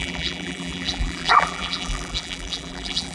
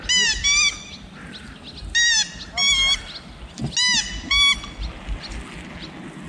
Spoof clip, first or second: first